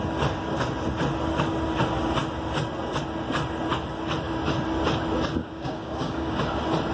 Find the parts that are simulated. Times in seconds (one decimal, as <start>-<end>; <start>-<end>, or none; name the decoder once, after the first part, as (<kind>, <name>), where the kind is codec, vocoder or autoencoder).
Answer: 5.4-6.4 (codec, DAC)